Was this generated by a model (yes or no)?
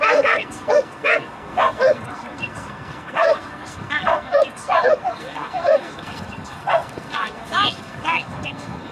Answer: yes